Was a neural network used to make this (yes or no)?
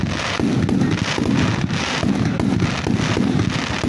no